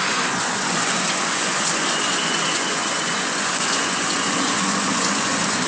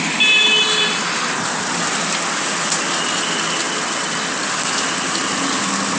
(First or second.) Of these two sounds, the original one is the second